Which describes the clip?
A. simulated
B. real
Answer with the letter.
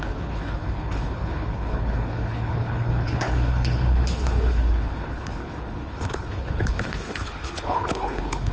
A